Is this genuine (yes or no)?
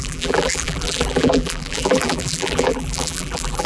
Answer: no